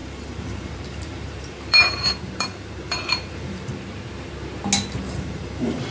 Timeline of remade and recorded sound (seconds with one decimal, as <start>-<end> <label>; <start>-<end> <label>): 0.0-3.7 remade; 3.7-5.0 recorded; 5.0-5.9 remade